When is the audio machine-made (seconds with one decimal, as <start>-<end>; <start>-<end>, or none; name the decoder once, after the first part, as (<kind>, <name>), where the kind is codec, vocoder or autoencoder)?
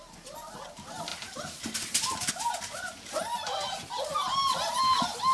1.1-2.3 (vocoder, BigVGAN v2)